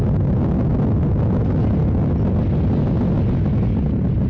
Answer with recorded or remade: recorded